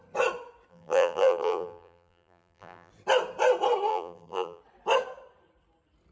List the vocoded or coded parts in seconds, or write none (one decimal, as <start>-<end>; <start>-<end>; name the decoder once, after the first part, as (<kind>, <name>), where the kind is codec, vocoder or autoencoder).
0.7-2.9 (vocoder, BigVGAN v2); 3.9-4.6